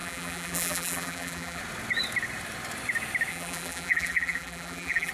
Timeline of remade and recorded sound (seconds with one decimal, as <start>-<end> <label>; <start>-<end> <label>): 0.0-1.6 remade; 1.6-3.3 recorded; 3.3-5.1 remade